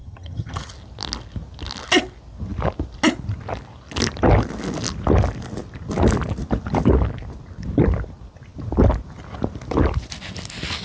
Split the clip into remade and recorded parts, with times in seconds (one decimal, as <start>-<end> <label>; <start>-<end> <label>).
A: 0.0-0.7 remade; 0.7-10.8 recorded